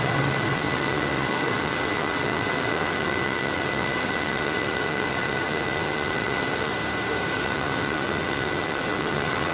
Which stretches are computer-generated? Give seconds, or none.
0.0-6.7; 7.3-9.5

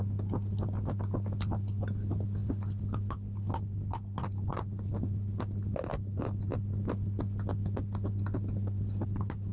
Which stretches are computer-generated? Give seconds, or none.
none

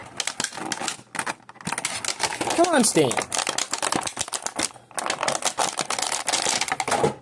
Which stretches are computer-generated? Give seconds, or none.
none

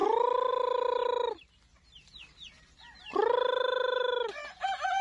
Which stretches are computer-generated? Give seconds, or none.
none

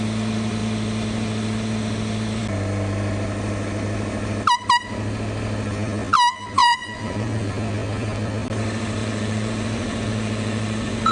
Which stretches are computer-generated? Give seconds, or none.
6.6-7.5; 9.0-11.1

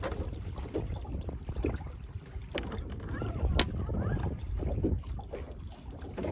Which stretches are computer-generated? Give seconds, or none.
0.0-2.4; 4.4-6.3